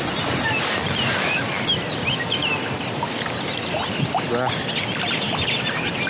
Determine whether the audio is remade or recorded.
recorded